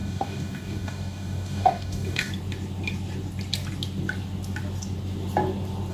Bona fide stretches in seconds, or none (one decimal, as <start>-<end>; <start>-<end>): 2.3-5.9